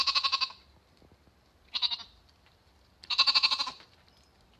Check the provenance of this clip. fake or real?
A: real